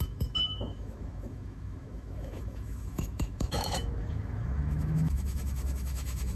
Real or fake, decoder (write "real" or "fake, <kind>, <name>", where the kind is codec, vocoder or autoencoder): fake, autoencoder, DAC-VAE